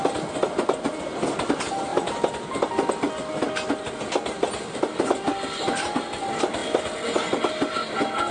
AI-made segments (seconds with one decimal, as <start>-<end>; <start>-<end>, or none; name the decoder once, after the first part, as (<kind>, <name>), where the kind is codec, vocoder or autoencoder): none